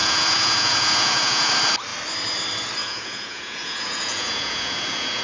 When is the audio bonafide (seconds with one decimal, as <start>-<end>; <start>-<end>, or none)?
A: 1.5-2.8

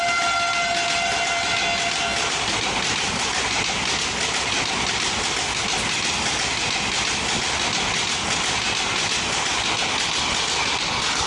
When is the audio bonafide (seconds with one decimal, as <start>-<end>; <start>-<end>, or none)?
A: 0.0-11.3